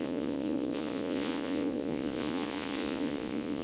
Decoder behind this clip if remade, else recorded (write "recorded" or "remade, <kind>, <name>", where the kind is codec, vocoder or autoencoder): remade, vocoder, Vocos